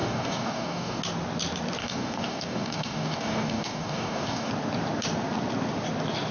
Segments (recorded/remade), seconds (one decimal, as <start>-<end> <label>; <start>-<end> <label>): 0.0-1.0 remade; 1.0-1.8 recorded; 1.8-4.5 remade; 4.5-6.3 recorded

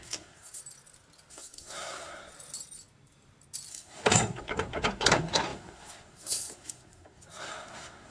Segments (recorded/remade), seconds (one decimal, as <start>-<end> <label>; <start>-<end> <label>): 0.0-0.6 remade; 0.6-1.3 recorded; 1.3-2.3 remade; 2.3-3.7 recorded; 3.7-8.1 remade

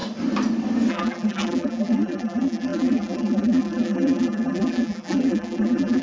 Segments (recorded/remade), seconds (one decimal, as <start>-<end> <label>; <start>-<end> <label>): 0.0-0.9 recorded; 0.9-6.0 remade

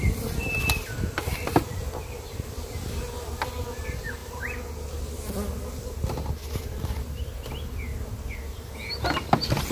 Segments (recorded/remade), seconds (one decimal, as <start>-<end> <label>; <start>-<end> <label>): 0.0-9.7 recorded

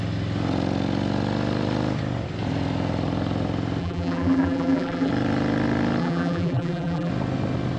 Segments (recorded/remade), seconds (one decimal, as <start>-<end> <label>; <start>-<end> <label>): 0.0-3.8 recorded; 3.8-5.1 remade; 5.1-6.0 recorded; 6.0-7.1 remade; 7.1-7.8 recorded